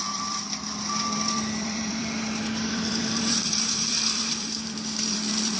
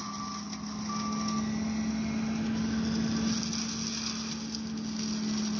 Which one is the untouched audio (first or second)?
second